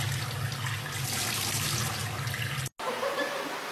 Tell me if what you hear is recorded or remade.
recorded